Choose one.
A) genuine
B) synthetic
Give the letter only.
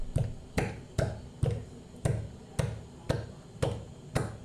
A